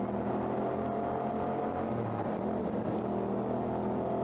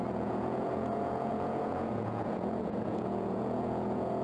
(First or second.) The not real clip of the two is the second